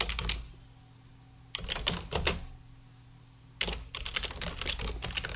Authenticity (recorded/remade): recorded